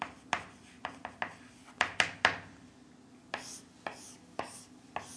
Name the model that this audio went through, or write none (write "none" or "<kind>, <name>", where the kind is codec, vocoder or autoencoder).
none